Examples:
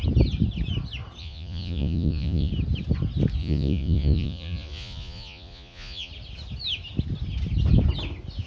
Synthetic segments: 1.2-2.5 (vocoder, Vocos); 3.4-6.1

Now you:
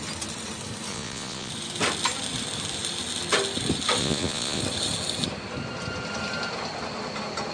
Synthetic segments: 0.9-1.5 (vocoder, Vocos); 4.0-4.6

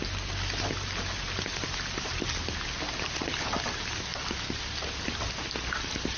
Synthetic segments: none

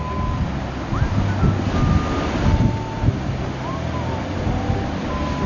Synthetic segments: none

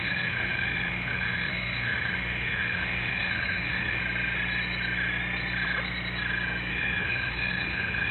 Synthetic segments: 0.0-4.0 (autoencoder, DAC-VAE); 6.7-8.1

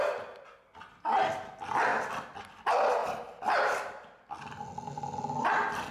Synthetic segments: 3.0-3.6 (vocoder, BigVGAN v2)

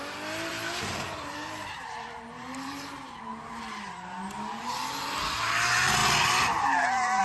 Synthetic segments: 0.5-3.9 (vocoder, BigVGAN v2)